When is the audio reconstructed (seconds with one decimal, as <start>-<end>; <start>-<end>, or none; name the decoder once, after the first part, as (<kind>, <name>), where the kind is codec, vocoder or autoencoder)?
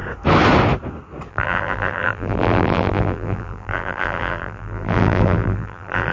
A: 1.3-6.1 (vocoder, BigVGAN v2)